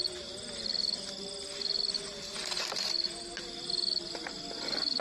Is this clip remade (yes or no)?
no